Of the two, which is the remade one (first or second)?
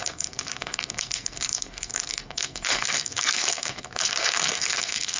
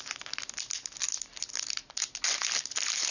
first